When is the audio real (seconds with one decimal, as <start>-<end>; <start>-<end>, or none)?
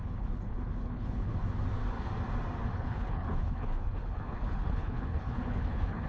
1.3-2.7